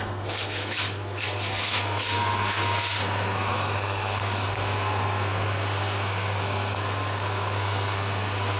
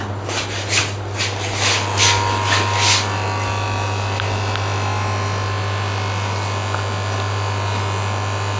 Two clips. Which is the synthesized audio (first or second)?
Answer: first